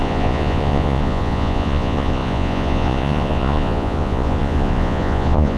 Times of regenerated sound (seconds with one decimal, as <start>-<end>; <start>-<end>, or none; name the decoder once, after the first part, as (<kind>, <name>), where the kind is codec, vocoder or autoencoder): 0.0-5.6 (vocoder, Vocos)